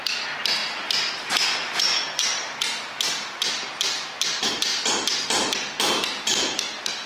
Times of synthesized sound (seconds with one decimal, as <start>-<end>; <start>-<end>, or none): 0.0-4.7